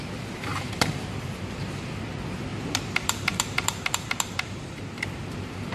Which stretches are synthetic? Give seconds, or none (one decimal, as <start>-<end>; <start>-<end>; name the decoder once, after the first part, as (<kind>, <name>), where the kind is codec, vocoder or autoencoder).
0.5-2.0 (vocoder, BigVGAN v2); 2.5-4.8